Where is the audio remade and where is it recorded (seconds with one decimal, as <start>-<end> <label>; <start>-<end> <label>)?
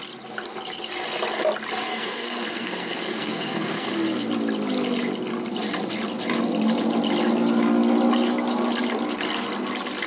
0.0-1.9 recorded; 1.9-3.9 remade; 3.9-10.1 recorded